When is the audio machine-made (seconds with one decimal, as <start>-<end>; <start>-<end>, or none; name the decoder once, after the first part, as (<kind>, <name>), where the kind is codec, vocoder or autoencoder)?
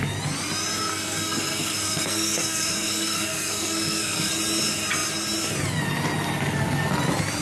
0.9-4.3 (codec, SNAC)